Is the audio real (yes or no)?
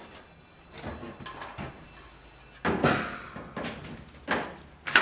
yes